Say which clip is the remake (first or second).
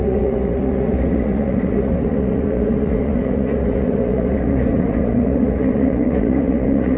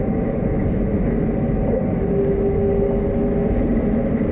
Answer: first